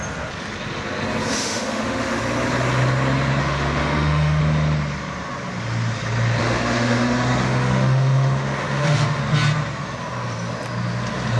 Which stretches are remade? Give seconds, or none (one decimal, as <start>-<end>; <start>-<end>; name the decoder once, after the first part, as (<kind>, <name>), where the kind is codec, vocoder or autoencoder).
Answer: 1.3-2.2 (autoencoder, DAC-VAE); 3.4-4.4; 6.4-9.2